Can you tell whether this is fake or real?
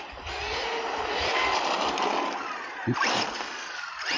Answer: real